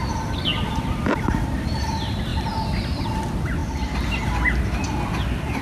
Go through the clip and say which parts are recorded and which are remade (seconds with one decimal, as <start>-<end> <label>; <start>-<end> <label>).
0.0-5.6 recorded